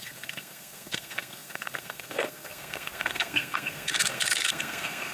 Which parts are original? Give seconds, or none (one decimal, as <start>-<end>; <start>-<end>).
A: none